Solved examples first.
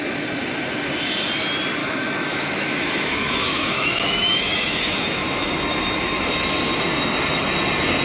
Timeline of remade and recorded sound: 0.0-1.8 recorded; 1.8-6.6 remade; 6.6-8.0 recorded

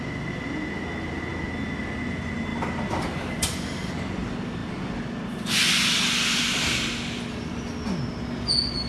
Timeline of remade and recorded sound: 0.0-2.5 recorded; 2.5-3.9 remade; 3.9-8.9 recorded

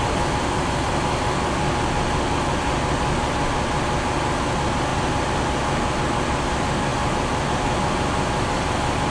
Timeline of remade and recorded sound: 0.0-9.1 recorded

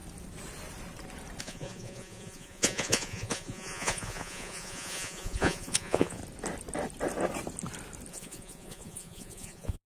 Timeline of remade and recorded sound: 0.0-1.4 recorded; 1.4-6.2 remade; 6.2-8.1 recorded; 8.1-9.9 remade

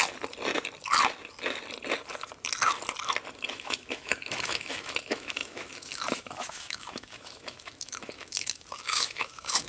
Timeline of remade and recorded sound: 0.0-3.5 recorded; 3.5-9.7 remade